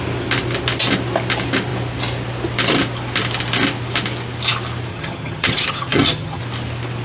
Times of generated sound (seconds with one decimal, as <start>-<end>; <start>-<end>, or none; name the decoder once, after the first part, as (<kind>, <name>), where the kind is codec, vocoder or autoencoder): 4.9-6.4 (vocoder, HiFi-GAN)